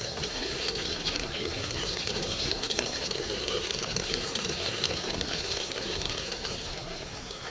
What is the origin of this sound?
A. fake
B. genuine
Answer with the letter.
A